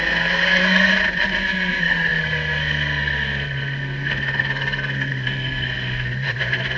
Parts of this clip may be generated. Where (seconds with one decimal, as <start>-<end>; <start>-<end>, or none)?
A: 0.0-0.9; 1.4-6.8